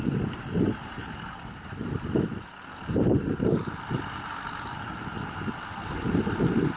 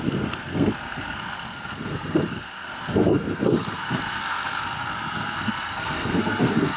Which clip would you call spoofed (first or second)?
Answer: second